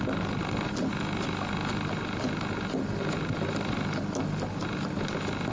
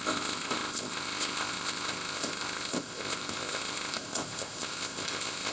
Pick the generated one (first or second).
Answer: second